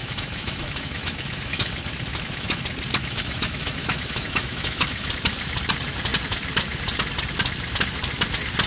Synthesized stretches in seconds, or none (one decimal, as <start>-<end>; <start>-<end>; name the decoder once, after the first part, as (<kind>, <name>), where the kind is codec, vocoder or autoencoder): 0.0-1.7 (autoencoder, DAC-VAE); 2.1-2.6; 3.0-5.1